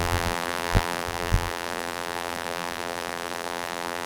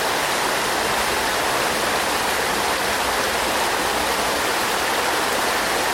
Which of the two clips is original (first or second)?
second